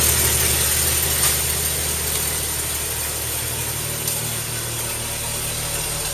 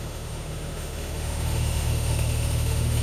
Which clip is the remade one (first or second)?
second